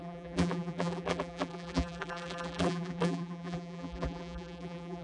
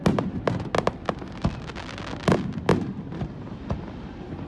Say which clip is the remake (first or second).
first